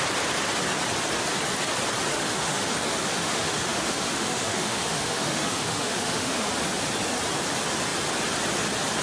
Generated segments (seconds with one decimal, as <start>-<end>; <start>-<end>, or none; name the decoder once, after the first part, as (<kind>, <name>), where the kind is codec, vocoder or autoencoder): 2.1-2.7 (autoencoder, DAC-VAE); 3.2-6.5